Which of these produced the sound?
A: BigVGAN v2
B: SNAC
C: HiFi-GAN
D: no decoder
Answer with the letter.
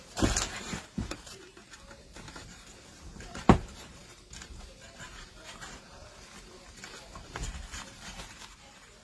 A